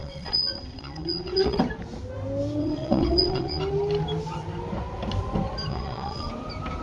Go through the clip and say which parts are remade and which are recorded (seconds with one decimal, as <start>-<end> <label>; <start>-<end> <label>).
0.0-1.6 remade; 1.6-2.6 recorded; 2.6-3.6 remade; 3.6-5.7 recorded; 5.7-6.3 remade; 6.3-6.8 recorded